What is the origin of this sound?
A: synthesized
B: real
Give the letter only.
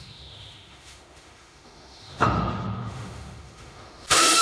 A